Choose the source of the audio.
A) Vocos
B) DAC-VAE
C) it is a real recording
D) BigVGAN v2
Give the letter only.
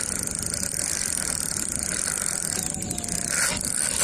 C